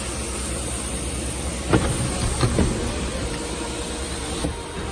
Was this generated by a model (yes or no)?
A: no